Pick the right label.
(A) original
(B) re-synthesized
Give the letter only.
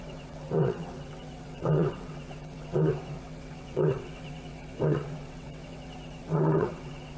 B